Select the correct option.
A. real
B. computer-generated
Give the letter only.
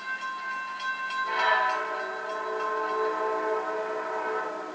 A